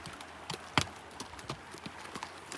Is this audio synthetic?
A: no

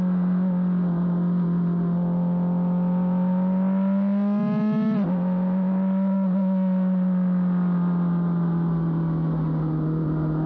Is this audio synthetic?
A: no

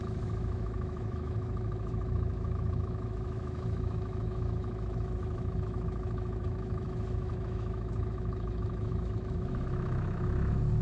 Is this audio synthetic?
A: yes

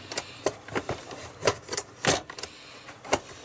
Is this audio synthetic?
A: no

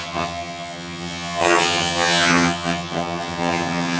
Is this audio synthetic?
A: yes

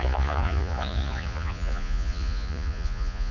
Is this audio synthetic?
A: yes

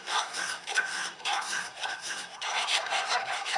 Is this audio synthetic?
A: yes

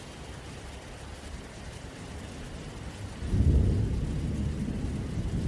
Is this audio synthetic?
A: no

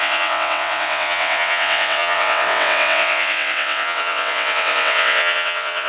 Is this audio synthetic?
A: yes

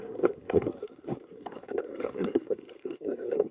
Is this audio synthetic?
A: yes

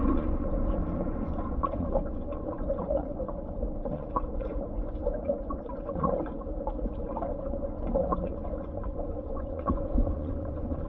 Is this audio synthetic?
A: yes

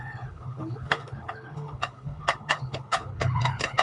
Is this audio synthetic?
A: yes